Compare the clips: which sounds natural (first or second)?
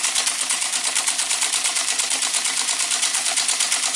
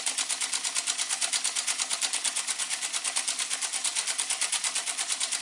second